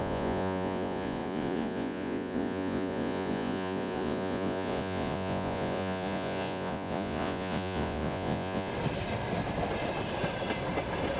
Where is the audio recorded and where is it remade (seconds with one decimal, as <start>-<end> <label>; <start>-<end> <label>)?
0.0-8.7 remade; 8.7-11.2 recorded